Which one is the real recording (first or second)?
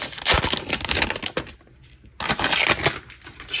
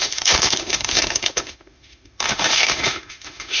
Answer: first